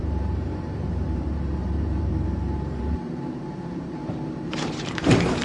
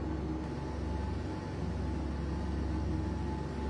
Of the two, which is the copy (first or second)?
first